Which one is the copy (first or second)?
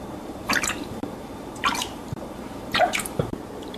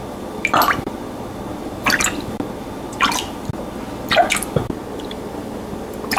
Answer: first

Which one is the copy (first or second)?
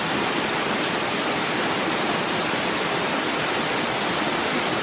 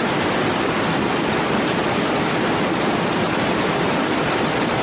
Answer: second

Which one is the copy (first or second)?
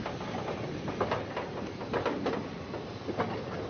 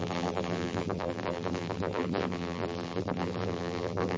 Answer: second